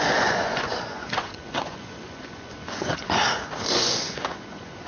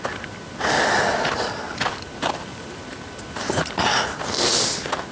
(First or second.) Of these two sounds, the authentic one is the second